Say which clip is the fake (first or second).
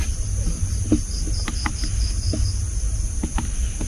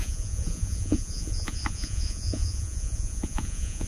second